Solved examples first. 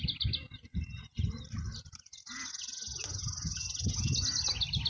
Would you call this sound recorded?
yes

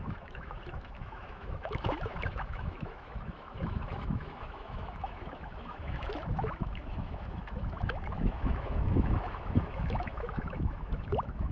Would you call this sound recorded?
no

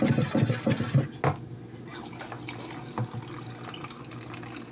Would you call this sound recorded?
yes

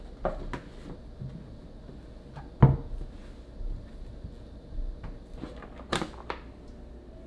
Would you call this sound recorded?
yes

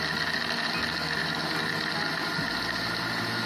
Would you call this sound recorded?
yes